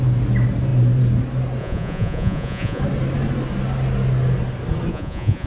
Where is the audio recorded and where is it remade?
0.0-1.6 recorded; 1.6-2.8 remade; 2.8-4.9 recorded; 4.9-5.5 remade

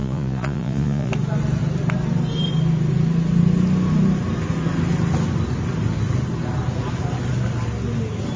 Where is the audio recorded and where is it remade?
0.0-1.1 remade; 1.1-8.4 recorded

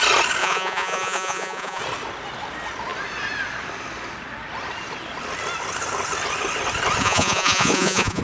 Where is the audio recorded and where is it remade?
0.0-0.4 recorded; 0.4-1.8 remade; 1.8-7.0 recorded; 7.0-8.2 remade

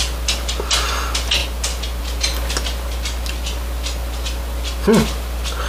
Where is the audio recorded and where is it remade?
0.0-5.7 recorded